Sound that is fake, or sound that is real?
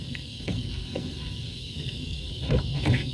fake